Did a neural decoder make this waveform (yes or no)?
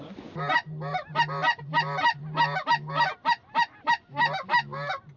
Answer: no